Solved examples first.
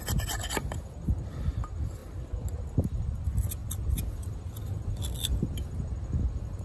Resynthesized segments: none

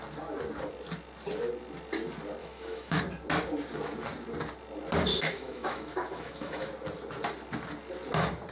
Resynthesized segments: 2.4-3.0 (autoencoder, DAC-VAE); 5.1-6.7

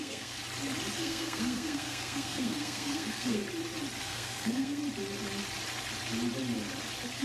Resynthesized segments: 0.0-0.4 (codec, SNAC); 1.0-3.4; 4.0-4.8

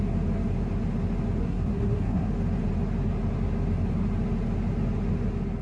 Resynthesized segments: 1.4-2.3 (codec, SNAC)

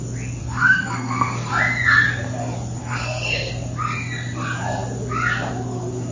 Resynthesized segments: 0.4-1.5 (codec, SNAC); 2.8-3.5

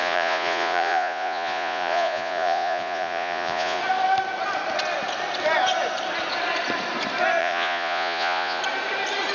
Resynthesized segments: 0.0-3.8 (vocoder, Vocos); 7.4-8.6

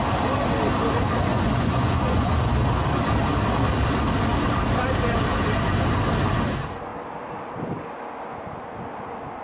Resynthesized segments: 1.3-2.5 (vocoder, Vocos)